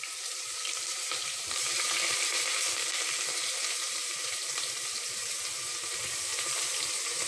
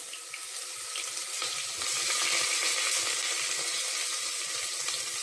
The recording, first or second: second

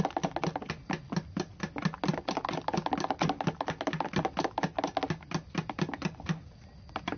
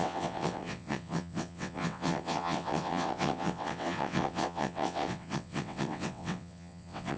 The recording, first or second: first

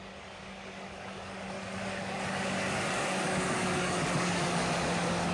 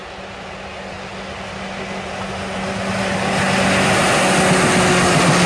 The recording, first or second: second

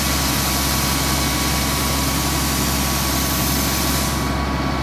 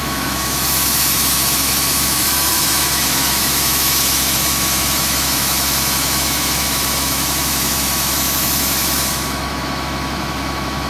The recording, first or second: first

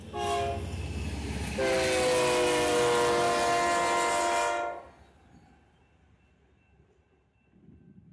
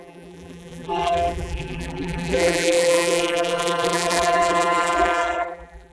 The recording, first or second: first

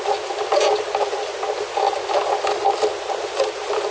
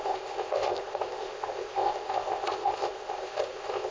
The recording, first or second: first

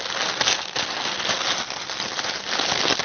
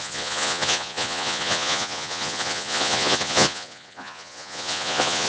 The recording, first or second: first